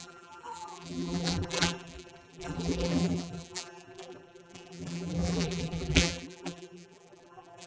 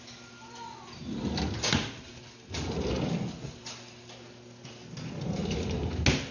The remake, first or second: first